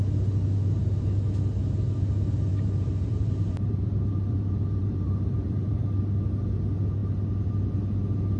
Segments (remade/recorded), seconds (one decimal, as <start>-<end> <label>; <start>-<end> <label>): 0.0-2.5 recorded; 2.5-6.2 remade; 6.2-8.4 recorded

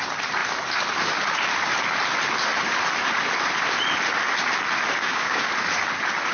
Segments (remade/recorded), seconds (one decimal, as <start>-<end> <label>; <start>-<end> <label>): 0.0-5.0 recorded; 5.0-5.5 remade; 5.5-6.3 recorded